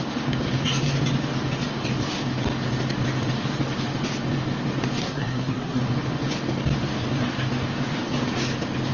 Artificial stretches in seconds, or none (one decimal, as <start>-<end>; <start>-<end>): 5.0-5.8